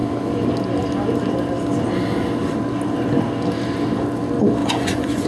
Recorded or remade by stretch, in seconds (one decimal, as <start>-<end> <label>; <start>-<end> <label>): 0.0-4.6 recorded; 4.6-5.3 remade